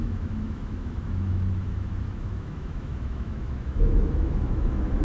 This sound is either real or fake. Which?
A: fake